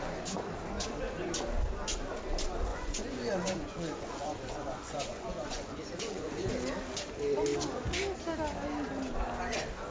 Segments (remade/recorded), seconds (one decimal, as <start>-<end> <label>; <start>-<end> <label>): 0.0-2.7 recorded; 2.7-6.5 remade; 6.5-9.9 recorded